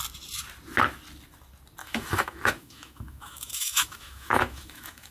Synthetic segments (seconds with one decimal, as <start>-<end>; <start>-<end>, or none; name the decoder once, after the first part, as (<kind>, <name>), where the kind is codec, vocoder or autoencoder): 1.8-5.1 (autoencoder, DAC-VAE)